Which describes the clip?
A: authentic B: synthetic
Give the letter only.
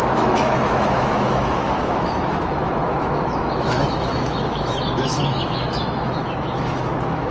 B